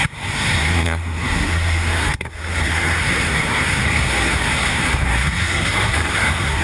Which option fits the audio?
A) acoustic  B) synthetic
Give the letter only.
B